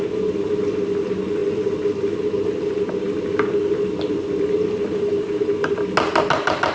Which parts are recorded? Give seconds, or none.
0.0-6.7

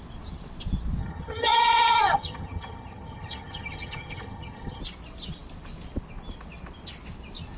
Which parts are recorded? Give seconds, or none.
0.0-1.0; 4.8-7.6

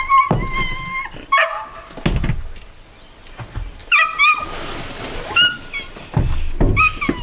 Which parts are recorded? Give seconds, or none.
0.0-7.2

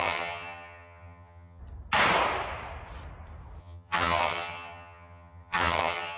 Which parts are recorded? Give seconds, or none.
1.6-3.6

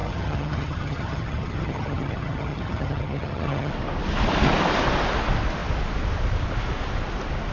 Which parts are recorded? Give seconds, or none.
3.7-7.5

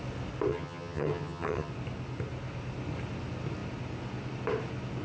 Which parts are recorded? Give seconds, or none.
0.0-0.5; 1.7-5.0

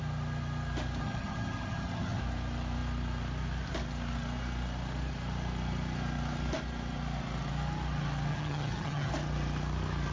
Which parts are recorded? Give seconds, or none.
0.0-1.0; 2.2-8.3; 9.1-10.1

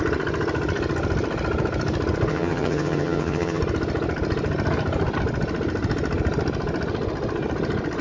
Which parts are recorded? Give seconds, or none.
0.0-2.3; 3.6-8.0